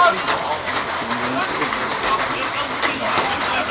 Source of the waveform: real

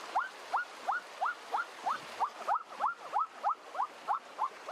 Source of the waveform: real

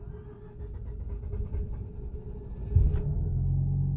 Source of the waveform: real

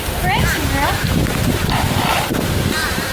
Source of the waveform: real